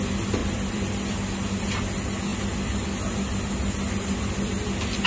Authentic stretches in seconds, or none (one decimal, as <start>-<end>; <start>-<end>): 0.0-0.4; 1.0-5.1